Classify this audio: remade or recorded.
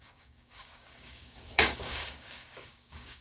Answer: remade